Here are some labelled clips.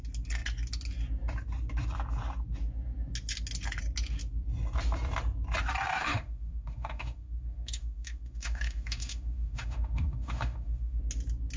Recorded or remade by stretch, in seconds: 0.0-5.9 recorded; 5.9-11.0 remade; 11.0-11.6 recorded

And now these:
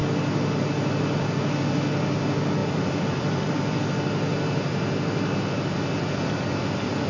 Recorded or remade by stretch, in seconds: 0.0-2.6 recorded; 2.6-3.8 remade; 3.8-7.1 recorded